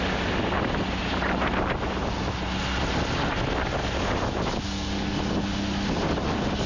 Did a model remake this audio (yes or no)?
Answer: no